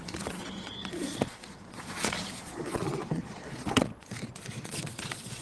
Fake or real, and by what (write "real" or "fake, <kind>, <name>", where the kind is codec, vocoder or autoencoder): fake, vocoder, Vocos